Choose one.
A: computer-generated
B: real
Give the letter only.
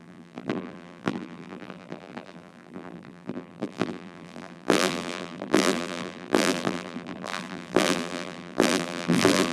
A